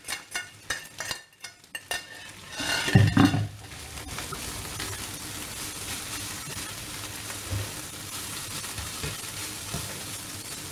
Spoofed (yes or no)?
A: no